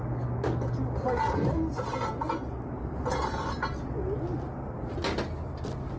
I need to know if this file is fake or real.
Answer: real